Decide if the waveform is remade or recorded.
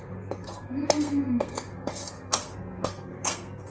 remade